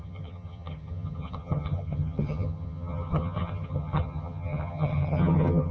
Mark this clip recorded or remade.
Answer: remade